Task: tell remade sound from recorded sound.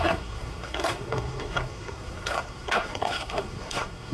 remade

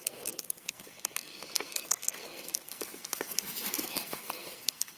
remade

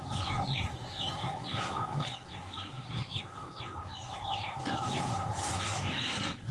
remade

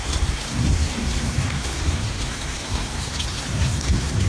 remade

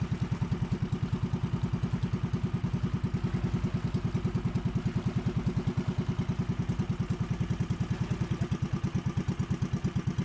recorded